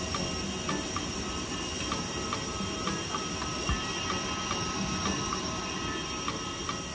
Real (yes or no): yes